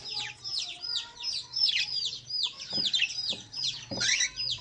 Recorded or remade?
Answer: recorded